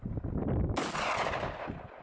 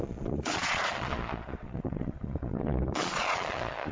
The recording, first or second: first